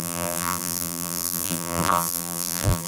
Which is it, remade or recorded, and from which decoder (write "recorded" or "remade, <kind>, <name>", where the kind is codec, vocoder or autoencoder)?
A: remade, vocoder, BigVGAN v2